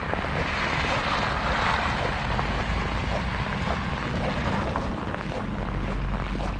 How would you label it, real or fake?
real